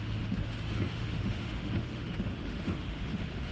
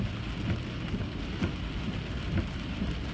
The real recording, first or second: second